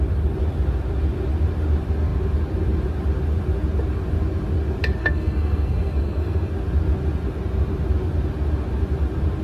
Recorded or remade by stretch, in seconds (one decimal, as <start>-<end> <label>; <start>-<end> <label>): 0.0-5.0 recorded; 5.0-6.5 remade; 6.5-9.4 recorded